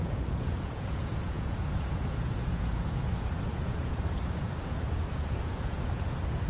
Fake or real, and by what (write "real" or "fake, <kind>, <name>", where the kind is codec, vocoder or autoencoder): fake, vocoder, Vocos